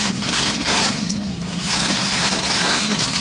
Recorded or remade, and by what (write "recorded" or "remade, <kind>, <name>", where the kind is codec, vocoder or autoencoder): remade, codec, SNAC